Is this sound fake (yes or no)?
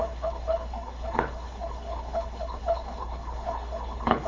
yes